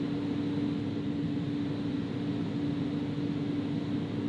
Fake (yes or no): no